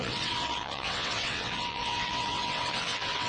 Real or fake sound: fake